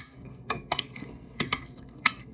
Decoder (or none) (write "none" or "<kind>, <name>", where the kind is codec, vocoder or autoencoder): codec, SNAC